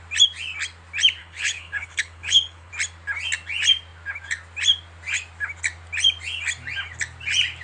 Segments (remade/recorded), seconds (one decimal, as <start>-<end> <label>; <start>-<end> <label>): 0.0-1.2 recorded; 1.2-2.7 remade; 2.7-7.6 recorded